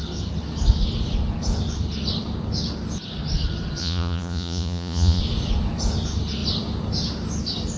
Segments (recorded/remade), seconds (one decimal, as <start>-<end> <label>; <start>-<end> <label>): 0.0-3.8 recorded; 3.8-5.2 remade; 5.2-7.8 recorded